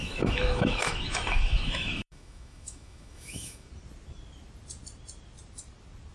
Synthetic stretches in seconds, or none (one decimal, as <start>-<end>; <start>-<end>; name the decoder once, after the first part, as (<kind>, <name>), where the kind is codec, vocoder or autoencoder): 0.0-3.7 (autoencoder, DAC-VAE)